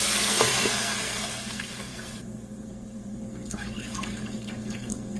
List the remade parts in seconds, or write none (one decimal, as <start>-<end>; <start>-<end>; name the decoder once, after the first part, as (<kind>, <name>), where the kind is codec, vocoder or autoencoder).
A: 0.0-5.2 (codec, SNAC)